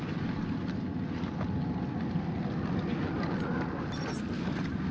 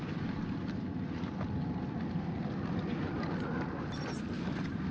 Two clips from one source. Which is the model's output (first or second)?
second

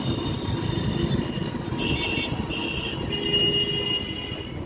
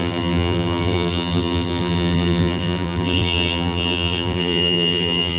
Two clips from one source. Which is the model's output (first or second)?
second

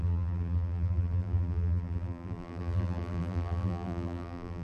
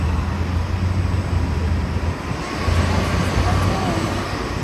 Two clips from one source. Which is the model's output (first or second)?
first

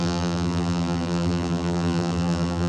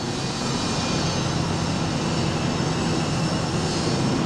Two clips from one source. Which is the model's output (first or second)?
first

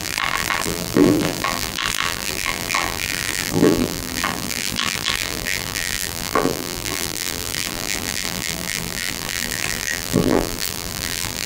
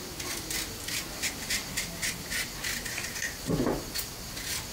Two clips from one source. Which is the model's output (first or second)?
first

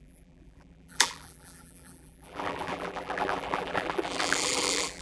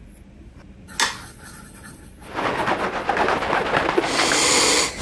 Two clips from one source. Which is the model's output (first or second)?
first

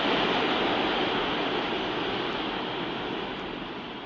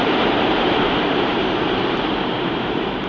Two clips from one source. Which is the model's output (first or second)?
second